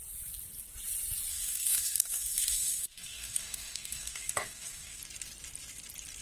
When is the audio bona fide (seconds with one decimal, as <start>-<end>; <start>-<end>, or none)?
0.0-1.3; 5.0-6.2